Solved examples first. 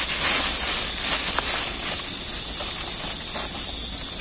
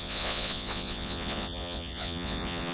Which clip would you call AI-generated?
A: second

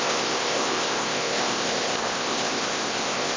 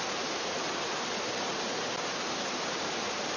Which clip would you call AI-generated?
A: first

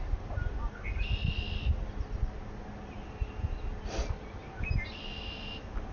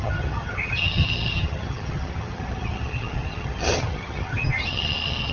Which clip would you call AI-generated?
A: second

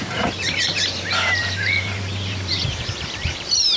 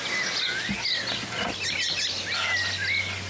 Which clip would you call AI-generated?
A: first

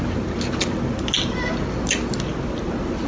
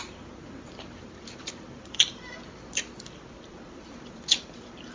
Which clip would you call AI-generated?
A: second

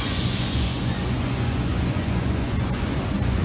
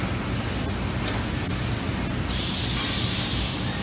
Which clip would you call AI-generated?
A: first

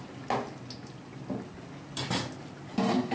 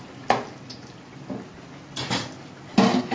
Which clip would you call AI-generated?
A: second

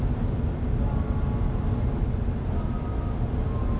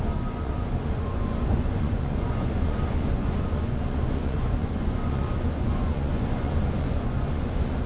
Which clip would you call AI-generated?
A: second